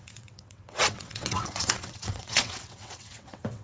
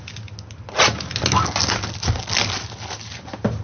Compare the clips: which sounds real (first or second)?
second